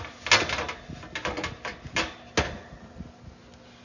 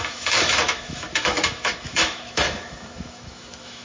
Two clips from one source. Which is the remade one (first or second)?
second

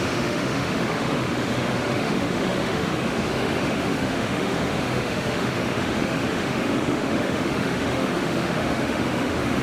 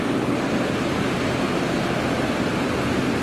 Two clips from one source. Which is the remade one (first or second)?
first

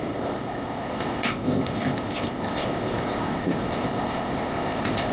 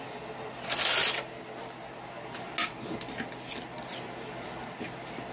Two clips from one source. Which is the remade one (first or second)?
first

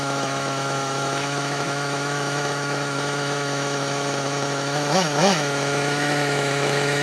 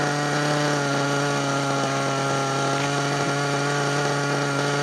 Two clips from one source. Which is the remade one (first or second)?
first